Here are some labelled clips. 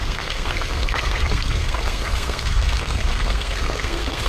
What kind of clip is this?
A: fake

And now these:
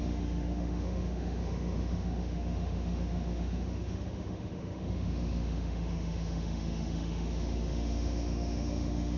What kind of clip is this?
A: fake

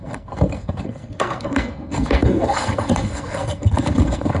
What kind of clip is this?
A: fake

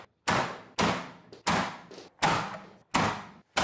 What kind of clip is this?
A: real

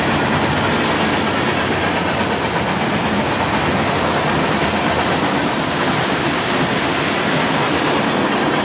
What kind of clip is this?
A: real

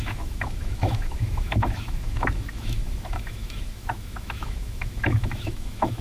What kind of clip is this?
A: fake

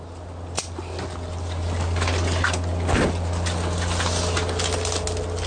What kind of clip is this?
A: real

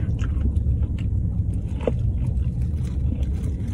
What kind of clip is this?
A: real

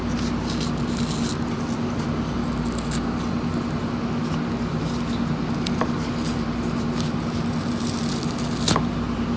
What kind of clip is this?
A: real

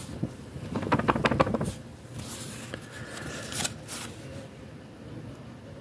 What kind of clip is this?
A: real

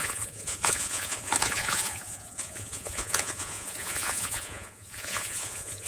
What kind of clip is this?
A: fake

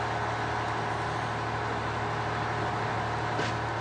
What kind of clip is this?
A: real